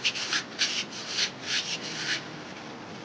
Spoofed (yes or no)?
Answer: no